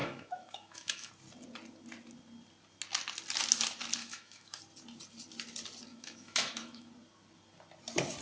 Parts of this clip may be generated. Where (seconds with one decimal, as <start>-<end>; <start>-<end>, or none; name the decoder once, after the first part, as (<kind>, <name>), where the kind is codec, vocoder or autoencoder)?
0.0-1.1 (autoencoder, DAC-VAE); 4.0-4.6; 5.9-6.9

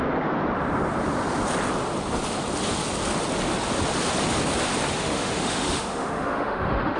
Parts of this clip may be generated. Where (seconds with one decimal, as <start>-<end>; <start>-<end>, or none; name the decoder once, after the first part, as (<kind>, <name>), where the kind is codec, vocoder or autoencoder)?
5.0-7.0 (autoencoder, DAC-VAE)